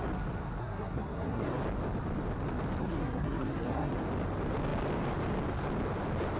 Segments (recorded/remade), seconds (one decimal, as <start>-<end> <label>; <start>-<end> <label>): 0.0-0.6 recorded; 0.6-1.6 remade; 1.6-2.8 recorded; 2.8-3.9 remade; 3.9-6.4 recorded